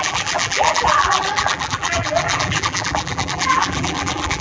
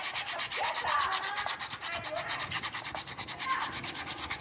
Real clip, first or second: second